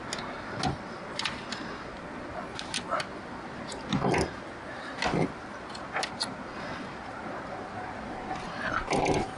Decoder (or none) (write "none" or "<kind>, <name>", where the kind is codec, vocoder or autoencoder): none